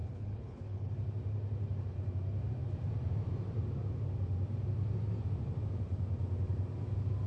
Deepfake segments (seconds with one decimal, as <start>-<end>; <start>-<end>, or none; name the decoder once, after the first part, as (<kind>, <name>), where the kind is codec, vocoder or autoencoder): 0.0-0.9 (codec, HILCodec)